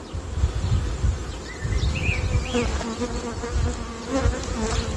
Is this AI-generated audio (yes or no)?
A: no